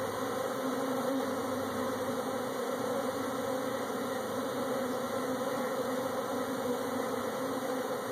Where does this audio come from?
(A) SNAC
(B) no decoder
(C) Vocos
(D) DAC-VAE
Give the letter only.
B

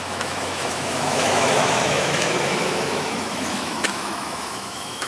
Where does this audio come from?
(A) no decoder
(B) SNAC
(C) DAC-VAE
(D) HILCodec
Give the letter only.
C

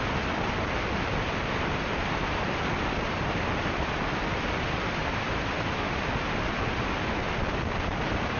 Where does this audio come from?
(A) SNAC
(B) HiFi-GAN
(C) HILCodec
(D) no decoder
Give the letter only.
D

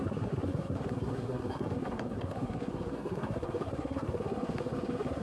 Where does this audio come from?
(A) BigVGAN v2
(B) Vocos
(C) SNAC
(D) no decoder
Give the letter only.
C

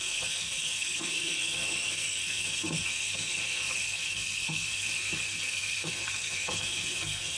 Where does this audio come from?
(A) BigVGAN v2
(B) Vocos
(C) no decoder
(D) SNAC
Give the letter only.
D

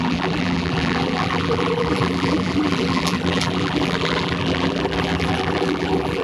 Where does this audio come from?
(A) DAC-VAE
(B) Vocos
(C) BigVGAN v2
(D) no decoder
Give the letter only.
C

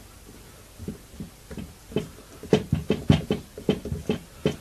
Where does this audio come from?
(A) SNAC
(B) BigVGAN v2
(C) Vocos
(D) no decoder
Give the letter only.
B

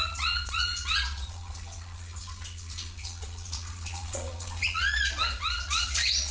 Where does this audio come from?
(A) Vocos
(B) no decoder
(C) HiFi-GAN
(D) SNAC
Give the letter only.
A